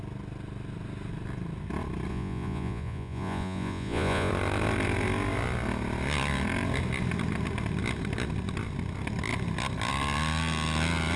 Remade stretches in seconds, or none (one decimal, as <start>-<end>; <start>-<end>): 2.1-4.3